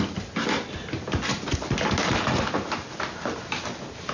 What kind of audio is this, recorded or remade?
recorded